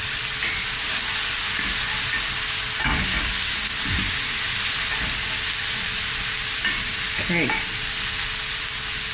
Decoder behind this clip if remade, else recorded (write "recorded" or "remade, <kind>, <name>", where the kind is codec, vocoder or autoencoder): recorded